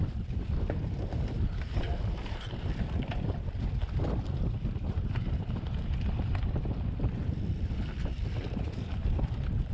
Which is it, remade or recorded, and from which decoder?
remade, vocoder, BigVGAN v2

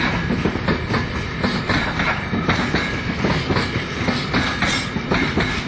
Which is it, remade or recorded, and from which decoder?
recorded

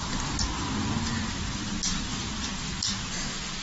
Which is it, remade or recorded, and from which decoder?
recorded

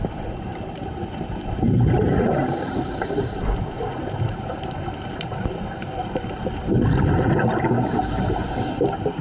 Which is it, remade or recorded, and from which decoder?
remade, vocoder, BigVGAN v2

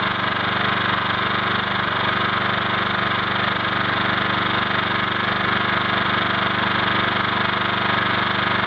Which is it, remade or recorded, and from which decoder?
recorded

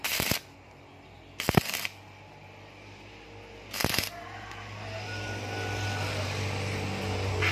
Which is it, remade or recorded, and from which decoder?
recorded